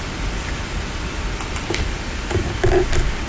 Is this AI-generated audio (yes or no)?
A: no